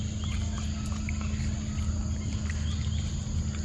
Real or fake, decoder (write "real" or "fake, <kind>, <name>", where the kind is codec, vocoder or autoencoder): real